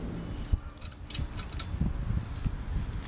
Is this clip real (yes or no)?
yes